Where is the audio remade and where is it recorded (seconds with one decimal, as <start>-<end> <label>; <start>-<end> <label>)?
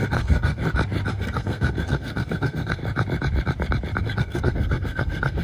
0.0-0.6 remade; 0.6-1.1 recorded; 1.1-2.8 remade; 2.8-4.0 recorded; 4.0-5.4 remade